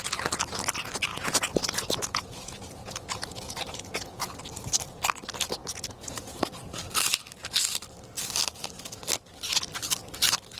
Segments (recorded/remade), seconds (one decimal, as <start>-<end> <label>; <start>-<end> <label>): 0.0-1.1 recorded; 1.1-4.4 remade; 4.4-5.6 recorded; 5.6-6.4 remade; 6.4-10.6 recorded

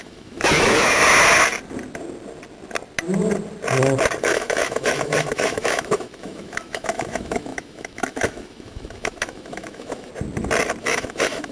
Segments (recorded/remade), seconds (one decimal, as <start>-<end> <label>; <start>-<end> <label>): 0.0-1.0 remade; 1.0-4.2 recorded; 4.2-10.1 remade; 10.1-10.8 recorded; 10.8-11.5 remade

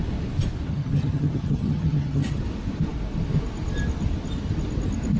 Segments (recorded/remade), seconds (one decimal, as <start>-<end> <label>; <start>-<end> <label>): 0.0-0.7 recorded; 0.7-2.4 remade; 2.4-5.2 recorded

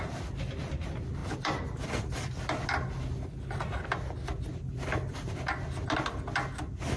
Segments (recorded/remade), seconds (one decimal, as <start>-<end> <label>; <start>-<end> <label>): 0.0-7.0 recorded

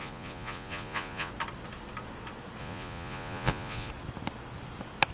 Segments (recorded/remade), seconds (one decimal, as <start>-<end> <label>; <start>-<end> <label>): 0.0-1.3 remade; 1.3-2.6 recorded; 2.6-3.9 remade; 3.9-5.1 recorded